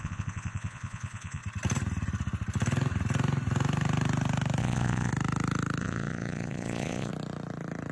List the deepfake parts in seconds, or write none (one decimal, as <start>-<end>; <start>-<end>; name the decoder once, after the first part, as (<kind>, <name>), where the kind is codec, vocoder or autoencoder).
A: 0.0-1.4 (vocoder, Vocos); 4.6-5.1; 5.8-7.1